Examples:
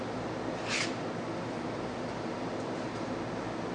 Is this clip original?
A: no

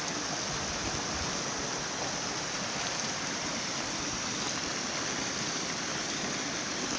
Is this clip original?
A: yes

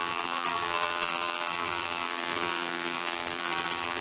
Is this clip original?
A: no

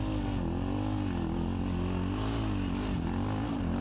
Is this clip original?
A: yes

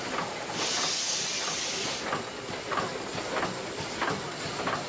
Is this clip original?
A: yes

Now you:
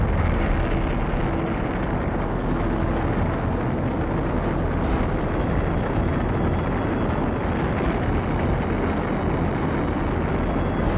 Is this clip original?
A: yes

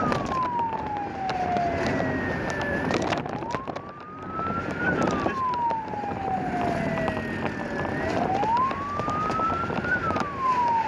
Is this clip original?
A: yes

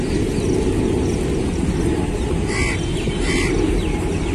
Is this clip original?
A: yes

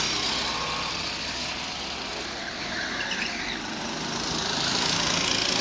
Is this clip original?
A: yes